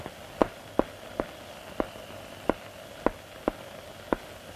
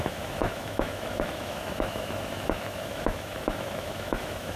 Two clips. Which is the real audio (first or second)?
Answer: first